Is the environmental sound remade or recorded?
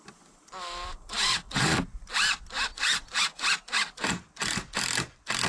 recorded